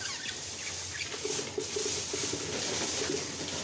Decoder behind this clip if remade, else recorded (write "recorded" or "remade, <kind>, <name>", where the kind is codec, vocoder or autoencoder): recorded